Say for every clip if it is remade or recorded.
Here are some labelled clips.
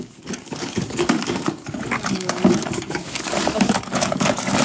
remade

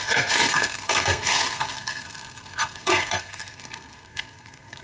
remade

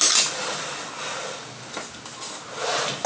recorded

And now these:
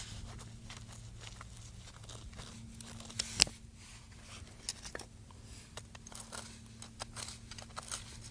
recorded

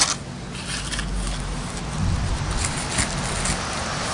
recorded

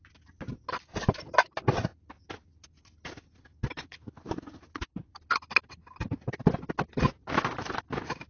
recorded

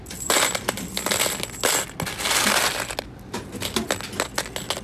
recorded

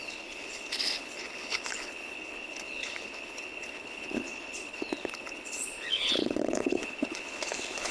remade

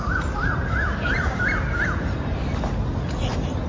recorded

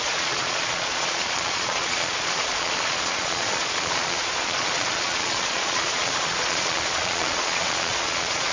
remade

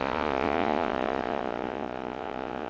remade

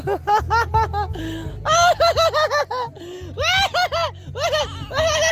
recorded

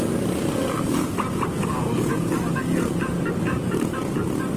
recorded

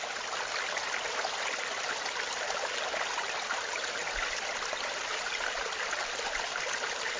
recorded